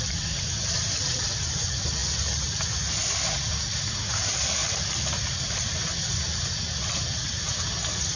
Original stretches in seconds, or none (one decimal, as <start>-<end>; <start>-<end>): 0.0-8.2